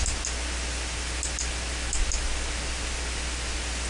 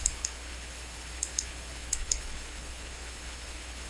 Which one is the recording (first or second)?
first